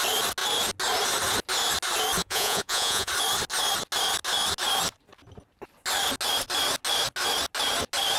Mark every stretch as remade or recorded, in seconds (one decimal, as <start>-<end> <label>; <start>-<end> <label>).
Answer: 0.0-2.2 recorded; 2.2-3.1 remade; 3.1-8.2 recorded

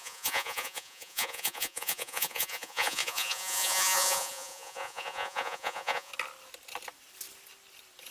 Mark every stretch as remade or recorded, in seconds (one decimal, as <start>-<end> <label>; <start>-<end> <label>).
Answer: 0.0-6.1 remade; 6.1-8.1 recorded